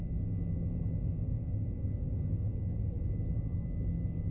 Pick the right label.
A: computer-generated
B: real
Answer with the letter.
B